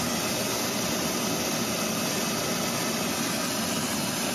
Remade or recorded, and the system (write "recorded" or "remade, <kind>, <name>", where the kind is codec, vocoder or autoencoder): recorded